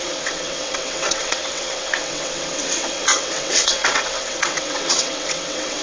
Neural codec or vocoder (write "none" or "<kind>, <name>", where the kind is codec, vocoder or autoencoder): vocoder, WaveNeXt